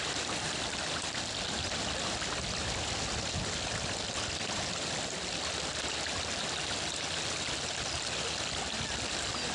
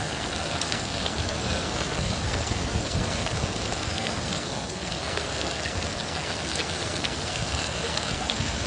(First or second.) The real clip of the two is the first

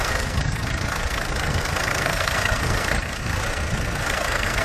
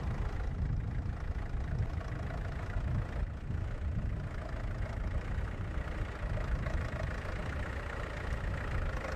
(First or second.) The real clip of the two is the second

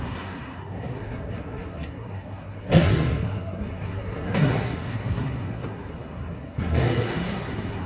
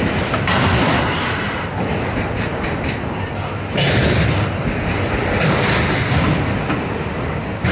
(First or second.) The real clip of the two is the second